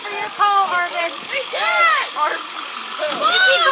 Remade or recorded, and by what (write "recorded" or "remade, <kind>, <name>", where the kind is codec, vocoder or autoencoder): remade, codec, DAC